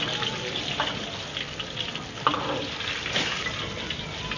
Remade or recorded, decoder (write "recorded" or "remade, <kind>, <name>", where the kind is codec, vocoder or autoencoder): recorded